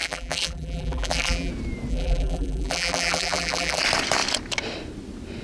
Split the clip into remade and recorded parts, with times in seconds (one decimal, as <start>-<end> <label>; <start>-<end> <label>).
0.0-1.5 remade; 1.5-1.9 recorded; 1.9-3.8 remade; 3.8-5.4 recorded